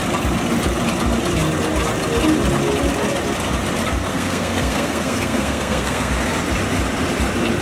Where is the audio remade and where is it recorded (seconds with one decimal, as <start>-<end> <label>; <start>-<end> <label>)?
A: 0.0-4.1 recorded; 4.1-6.1 remade; 6.1-7.6 recorded